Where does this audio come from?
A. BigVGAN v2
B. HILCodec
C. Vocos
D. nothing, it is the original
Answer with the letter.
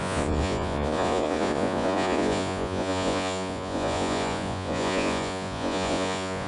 C